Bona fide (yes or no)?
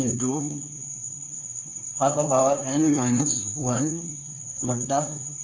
no